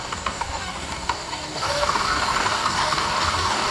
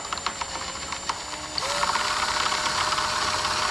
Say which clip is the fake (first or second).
first